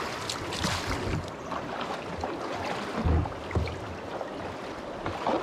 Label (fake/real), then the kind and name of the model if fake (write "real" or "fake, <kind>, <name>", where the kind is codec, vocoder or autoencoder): real